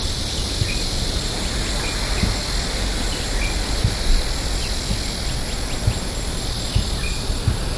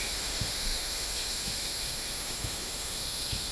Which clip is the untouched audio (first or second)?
first